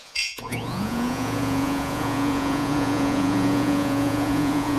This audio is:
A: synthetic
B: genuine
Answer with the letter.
A